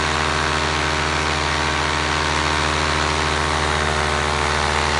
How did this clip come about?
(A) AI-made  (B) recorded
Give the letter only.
B